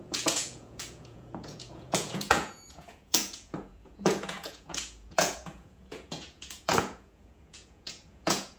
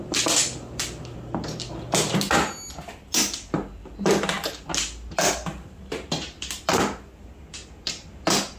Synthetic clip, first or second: first